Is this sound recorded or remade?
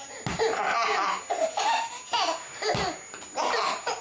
recorded